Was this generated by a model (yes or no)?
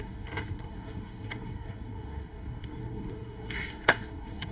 yes